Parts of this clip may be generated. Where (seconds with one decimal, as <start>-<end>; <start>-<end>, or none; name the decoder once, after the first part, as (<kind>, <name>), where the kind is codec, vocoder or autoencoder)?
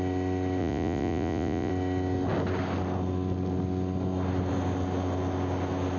0.6-1.7 (vocoder, Vocos)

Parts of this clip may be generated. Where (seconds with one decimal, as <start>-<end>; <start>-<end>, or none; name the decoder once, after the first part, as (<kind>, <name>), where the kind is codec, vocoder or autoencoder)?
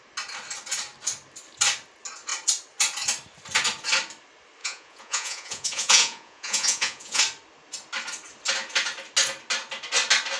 4.6-7.2 (vocoder, Vocos)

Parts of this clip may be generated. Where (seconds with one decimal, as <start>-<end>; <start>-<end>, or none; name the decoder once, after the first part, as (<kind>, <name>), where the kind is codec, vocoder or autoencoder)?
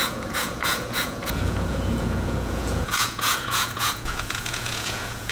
0.0-5.3 (vocoder, Vocos)